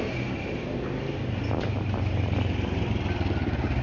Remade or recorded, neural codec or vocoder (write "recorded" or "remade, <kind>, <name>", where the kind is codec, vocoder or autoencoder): recorded